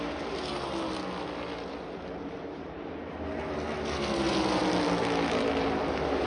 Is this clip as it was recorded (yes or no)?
yes